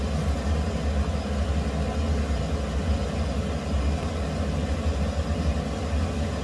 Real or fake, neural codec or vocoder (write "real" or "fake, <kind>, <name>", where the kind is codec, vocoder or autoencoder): real